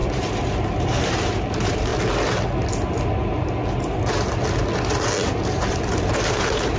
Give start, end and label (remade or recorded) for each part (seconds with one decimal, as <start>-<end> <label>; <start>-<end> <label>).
0.0-1.9 remade; 1.9-6.0 recorded; 6.0-6.8 remade